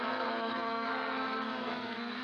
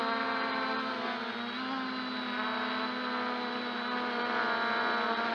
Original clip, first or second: second